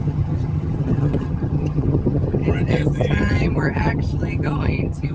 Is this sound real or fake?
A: fake